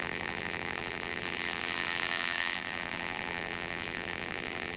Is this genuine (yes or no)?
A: no